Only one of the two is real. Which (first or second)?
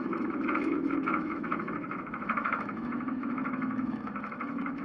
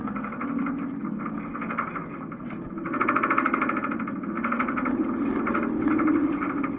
second